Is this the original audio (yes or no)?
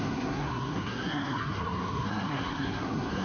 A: no